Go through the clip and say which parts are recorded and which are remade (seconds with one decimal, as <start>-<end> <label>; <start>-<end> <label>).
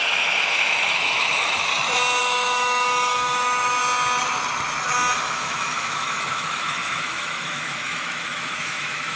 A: 0.0-1.7 remade; 1.7-2.2 recorded; 2.2-3.8 remade; 3.8-5.2 recorded; 5.2-9.2 remade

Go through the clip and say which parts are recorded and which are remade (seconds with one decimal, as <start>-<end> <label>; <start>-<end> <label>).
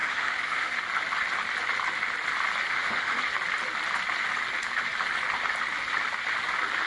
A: 0.0-0.7 remade; 0.7-2.7 recorded; 2.7-3.2 remade; 3.2-6.9 recorded